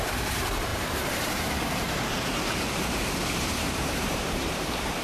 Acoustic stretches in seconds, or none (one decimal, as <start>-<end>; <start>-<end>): none